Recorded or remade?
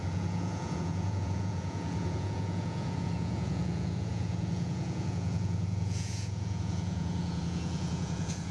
remade